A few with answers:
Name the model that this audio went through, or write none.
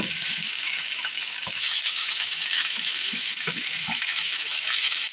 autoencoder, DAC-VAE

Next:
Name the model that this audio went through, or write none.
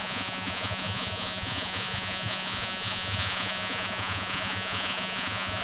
vocoder, Vocos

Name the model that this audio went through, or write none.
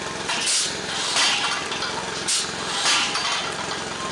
none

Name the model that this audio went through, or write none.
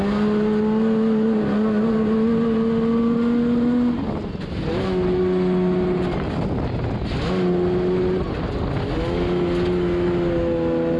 none